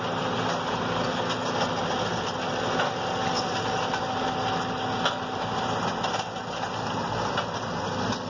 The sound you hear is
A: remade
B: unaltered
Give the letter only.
B